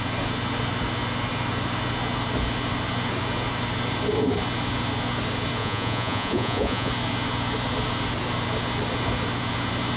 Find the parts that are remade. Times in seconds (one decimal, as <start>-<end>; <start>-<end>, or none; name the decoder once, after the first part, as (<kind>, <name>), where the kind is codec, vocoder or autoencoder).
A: 5.6-6.9 (vocoder, Vocos)